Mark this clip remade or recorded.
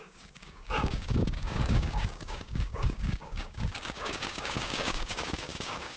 remade